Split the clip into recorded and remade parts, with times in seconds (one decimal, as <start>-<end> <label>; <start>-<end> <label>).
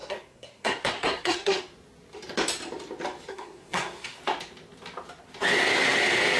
0.0-1.6 remade; 1.6-3.3 recorded; 3.3-4.2 remade; 4.2-6.4 recorded